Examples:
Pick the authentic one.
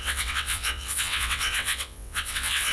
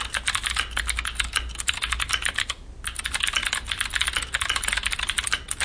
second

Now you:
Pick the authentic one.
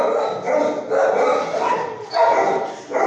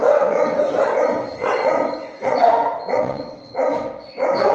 first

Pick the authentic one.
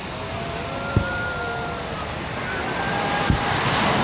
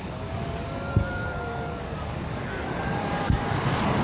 first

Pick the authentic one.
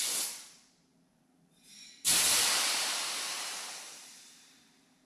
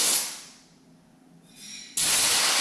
second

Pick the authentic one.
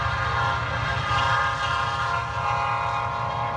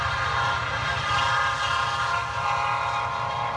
first